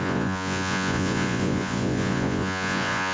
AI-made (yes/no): yes